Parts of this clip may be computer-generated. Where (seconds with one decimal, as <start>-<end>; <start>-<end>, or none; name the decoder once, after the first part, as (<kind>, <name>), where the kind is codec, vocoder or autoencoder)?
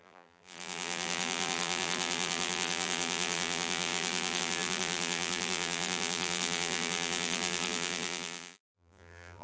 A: 0.0-9.4 (vocoder, BigVGAN v2)